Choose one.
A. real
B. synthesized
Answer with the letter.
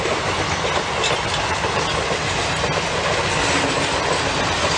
A